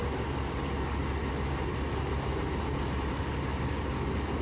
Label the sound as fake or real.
real